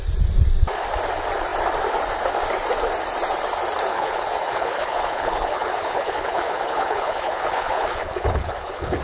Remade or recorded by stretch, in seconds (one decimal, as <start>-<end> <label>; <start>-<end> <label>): 0.0-3.9 recorded; 3.9-9.0 remade